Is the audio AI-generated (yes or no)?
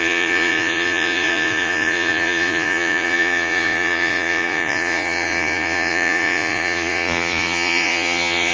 yes